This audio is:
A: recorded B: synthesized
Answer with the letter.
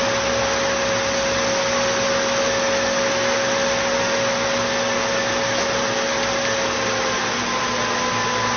A